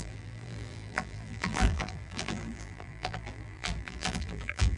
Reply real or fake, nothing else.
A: fake